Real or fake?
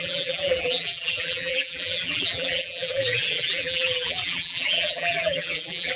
fake